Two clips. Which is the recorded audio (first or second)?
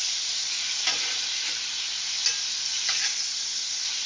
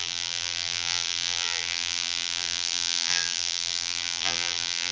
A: first